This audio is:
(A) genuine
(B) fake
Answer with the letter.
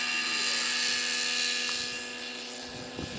A